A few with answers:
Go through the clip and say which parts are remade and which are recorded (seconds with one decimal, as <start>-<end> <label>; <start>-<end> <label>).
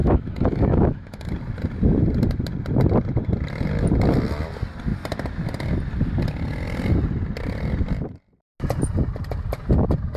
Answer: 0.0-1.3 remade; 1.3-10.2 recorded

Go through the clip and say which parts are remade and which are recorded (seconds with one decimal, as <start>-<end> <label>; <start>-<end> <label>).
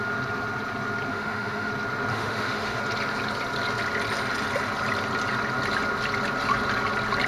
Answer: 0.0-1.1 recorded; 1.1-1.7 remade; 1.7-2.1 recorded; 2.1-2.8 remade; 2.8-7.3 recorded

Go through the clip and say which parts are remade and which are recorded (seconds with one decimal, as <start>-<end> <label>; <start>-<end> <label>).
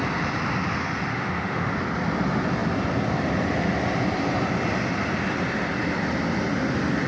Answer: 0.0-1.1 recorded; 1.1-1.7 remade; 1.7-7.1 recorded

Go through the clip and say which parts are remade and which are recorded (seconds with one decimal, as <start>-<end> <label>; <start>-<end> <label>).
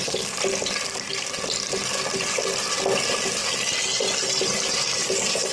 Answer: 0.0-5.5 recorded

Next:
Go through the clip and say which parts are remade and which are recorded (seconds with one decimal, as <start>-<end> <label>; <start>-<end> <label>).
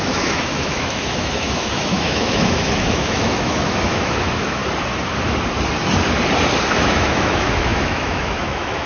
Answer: 0.0-4.6 remade; 4.6-6.7 recorded; 6.7-8.9 remade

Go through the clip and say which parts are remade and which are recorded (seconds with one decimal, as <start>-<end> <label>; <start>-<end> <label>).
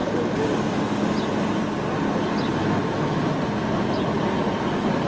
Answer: 0.0-2.6 recorded; 2.6-3.2 remade; 3.2-5.1 recorded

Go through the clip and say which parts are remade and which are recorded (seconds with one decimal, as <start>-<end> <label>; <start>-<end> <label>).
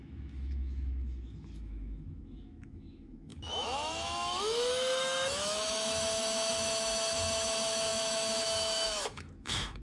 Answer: 0.0-9.8 remade